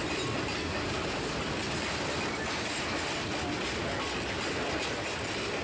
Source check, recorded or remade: recorded